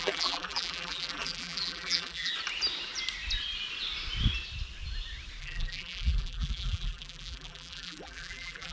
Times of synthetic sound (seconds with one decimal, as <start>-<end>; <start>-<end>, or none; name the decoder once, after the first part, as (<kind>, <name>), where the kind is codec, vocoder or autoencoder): 0.0-2.3 (vocoder, BigVGAN v2); 5.4-8.7